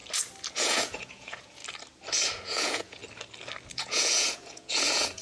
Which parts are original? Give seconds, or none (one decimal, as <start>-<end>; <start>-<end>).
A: 0.0-0.5; 1.6-2.4; 3.0-3.7